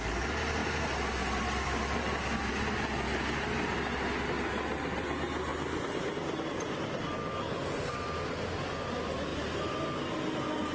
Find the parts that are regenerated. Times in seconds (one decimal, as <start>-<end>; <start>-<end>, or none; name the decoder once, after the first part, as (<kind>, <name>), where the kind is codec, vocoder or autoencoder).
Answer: none